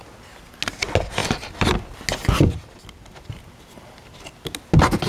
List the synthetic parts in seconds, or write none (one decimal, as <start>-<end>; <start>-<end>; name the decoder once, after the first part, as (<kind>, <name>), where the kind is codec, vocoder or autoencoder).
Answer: none